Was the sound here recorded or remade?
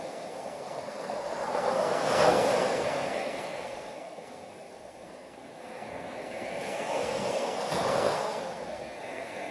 remade